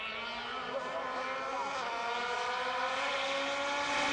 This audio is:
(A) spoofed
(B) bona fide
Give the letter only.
B